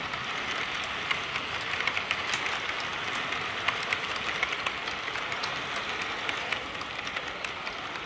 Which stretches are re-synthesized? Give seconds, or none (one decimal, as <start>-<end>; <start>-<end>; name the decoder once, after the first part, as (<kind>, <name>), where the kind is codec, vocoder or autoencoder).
none